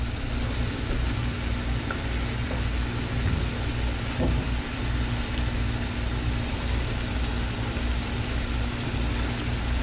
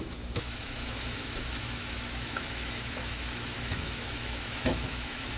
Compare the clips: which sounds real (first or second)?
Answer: first